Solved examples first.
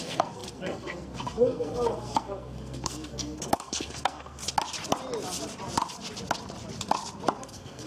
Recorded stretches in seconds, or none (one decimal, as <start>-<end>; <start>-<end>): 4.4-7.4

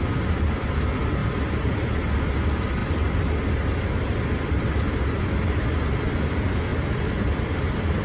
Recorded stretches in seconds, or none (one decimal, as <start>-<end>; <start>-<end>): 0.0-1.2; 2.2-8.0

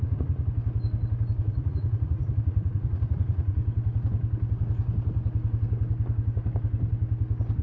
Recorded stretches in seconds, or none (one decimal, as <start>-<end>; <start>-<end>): 0.5-1.4; 3.6-7.6